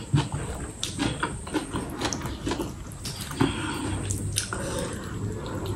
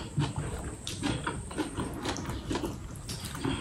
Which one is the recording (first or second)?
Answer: first